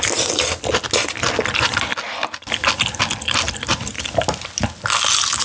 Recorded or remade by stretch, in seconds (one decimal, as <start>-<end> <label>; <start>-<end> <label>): 0.0-5.4 recorded